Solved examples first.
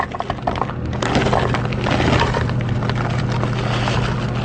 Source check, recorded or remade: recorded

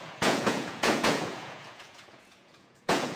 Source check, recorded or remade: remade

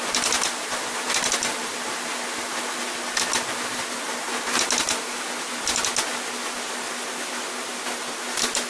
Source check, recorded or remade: recorded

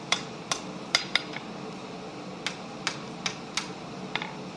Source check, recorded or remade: recorded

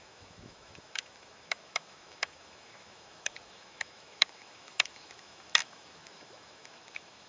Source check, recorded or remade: remade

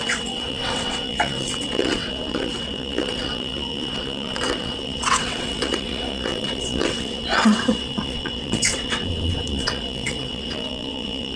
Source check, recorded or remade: remade